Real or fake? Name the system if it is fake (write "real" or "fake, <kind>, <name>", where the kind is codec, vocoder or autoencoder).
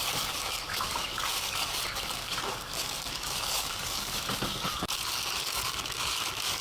fake, codec, DAC